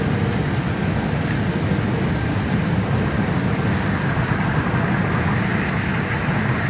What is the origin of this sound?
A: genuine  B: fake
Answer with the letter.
A